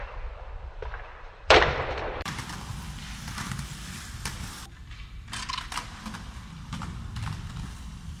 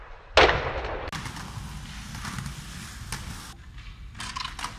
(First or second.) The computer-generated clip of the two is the first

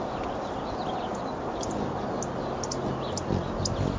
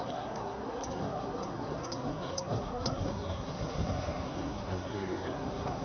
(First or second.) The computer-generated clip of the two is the second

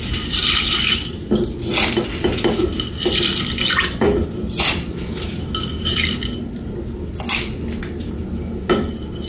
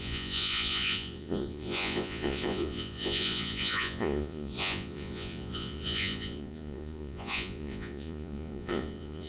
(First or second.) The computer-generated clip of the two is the second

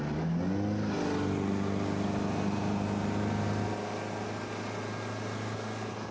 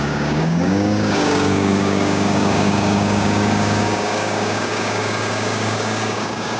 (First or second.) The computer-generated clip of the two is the second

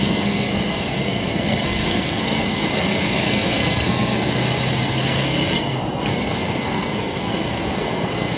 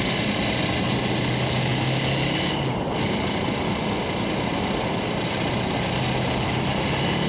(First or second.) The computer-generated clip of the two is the first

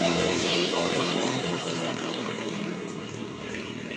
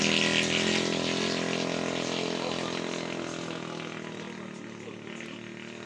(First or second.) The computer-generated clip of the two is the first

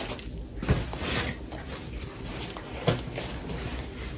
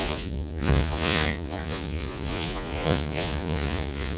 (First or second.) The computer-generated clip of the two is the second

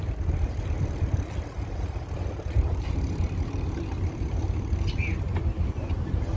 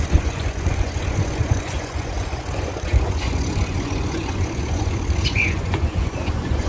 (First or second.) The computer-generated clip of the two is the second